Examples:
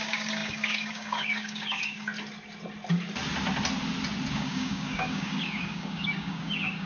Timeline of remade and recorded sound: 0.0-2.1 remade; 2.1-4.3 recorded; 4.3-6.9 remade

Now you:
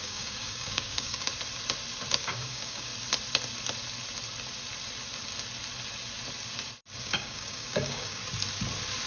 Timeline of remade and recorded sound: 0.0-1.3 remade; 1.3-2.1 recorded; 2.1-2.9 remade; 2.9-7.0 recorded; 7.0-8.2 remade; 8.2-9.1 recorded

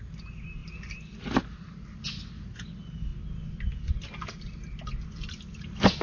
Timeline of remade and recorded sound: 0.0-6.0 recorded

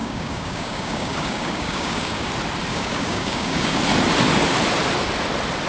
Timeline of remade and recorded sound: 0.0-2.3 remade; 2.3-2.7 recorded; 2.7-3.8 remade; 3.8-5.7 recorded

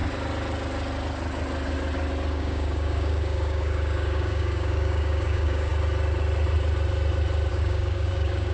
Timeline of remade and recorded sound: 0.0-2.3 recorded; 2.3-5.7 remade; 5.7-7.5 recorded; 7.5-8.5 remade